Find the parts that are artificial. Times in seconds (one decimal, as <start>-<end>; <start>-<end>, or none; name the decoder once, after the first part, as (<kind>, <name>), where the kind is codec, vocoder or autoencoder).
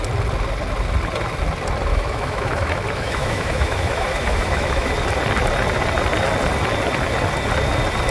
1.9-4.9 (autoencoder, DAC-VAE)